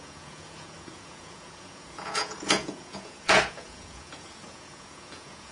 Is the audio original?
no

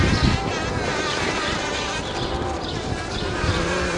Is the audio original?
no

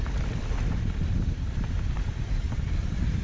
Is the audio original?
yes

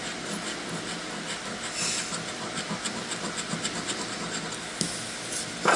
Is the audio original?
yes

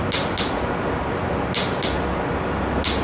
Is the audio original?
yes